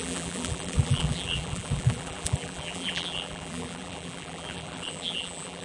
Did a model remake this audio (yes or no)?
yes